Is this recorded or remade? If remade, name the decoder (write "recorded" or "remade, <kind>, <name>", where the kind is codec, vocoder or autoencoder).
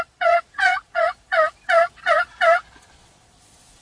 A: remade, vocoder, Vocos